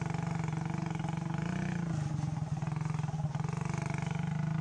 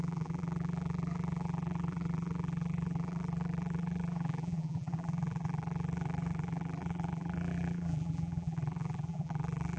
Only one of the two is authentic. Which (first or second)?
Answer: first